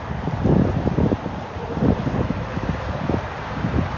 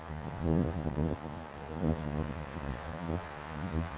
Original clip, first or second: first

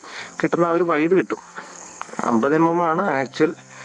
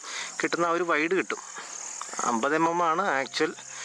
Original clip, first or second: second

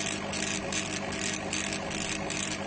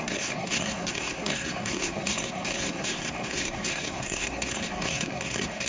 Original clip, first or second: first